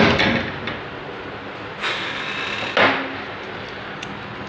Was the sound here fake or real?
real